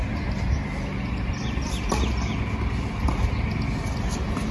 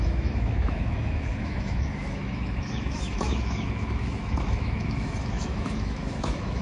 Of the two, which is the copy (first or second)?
second